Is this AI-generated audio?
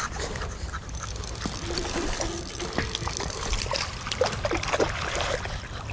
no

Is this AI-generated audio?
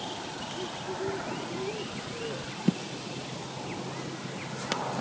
no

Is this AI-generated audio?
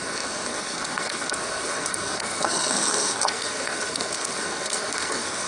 yes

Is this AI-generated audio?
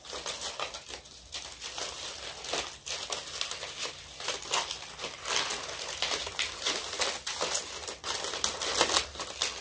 no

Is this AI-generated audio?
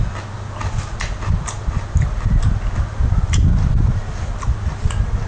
no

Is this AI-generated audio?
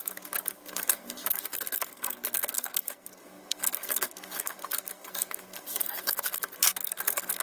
yes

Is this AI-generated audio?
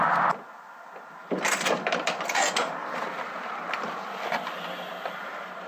no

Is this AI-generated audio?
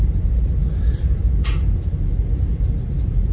no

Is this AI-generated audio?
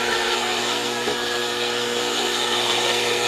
yes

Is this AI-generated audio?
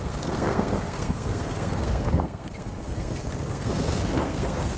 yes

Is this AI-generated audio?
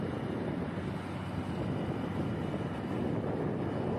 no